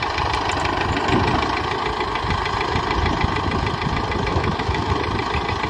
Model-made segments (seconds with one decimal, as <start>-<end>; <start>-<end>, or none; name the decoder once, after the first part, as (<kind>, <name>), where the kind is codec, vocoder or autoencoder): 4.3-4.9 (autoencoder, DAC-VAE)